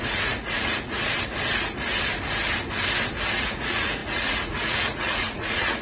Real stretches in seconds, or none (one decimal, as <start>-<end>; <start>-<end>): 1.0-3.4